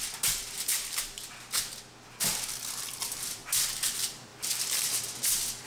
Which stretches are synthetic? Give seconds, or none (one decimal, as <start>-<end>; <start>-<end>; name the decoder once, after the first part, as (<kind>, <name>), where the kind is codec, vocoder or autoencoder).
0.0-0.7 (vocoder, BigVGAN v2); 2.9-3.4; 3.9-5.7